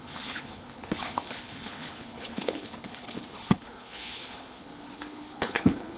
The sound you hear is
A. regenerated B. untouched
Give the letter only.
A